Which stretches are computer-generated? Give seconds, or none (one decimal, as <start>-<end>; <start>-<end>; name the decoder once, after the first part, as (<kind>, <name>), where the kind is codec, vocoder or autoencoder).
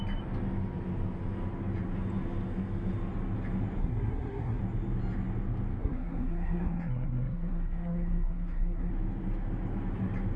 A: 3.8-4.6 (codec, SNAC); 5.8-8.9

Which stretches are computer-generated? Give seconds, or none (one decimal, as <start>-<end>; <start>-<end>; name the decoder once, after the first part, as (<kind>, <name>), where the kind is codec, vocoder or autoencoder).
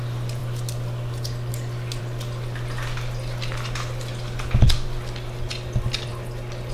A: none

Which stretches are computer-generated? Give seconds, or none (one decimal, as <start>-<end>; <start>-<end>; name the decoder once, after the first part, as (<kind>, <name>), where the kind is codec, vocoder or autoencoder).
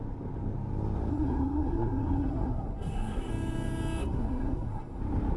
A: 1.1-3.3 (codec, SNAC); 4.0-5.0